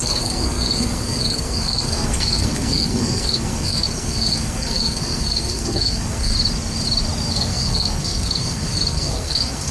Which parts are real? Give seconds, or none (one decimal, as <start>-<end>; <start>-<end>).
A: 6.3-7.3